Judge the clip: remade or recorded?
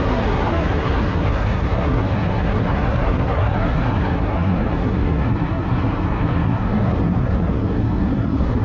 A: remade